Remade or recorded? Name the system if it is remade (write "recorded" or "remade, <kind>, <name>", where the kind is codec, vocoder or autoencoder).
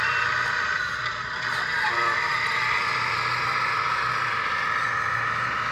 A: remade, vocoder, BigVGAN v2